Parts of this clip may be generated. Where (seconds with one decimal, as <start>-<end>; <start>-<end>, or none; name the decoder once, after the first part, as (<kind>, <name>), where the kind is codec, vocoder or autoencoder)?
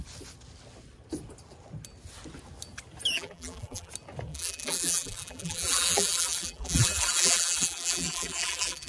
3.1-3.9 (vocoder, BigVGAN v2); 4.3-8.9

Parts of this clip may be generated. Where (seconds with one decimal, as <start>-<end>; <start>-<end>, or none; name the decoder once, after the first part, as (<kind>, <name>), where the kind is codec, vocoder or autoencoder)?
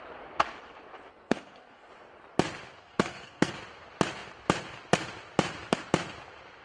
1.1-1.9 (codec, SNAC); 2.8-3.5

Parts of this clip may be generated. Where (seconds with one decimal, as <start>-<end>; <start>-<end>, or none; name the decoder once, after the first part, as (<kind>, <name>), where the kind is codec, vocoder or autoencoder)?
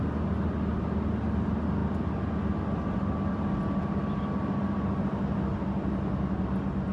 none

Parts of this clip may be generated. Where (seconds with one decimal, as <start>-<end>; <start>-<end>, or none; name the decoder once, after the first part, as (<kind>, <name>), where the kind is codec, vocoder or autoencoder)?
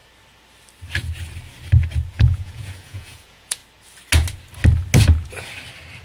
2.1-3.6 (vocoder, Vocos)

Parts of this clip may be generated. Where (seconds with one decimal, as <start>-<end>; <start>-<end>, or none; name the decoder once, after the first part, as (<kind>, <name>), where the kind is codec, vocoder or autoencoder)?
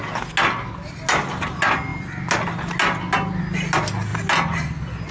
none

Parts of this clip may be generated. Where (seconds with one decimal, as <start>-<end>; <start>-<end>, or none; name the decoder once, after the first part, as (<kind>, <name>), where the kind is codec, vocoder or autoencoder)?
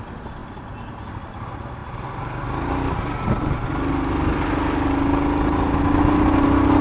none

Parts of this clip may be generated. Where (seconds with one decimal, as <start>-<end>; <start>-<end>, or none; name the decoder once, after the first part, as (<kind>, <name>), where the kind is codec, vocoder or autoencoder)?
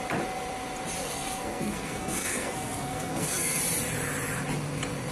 1.0-3.6 (codec, SNAC)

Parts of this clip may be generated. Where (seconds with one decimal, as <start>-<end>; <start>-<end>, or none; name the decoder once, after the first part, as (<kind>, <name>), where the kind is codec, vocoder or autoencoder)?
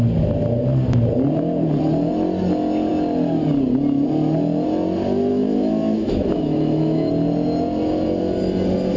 5.3-7.1 (autoencoder, DAC-VAE)